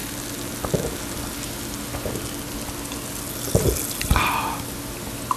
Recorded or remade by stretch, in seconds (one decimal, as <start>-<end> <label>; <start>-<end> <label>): 0.0-5.4 recorded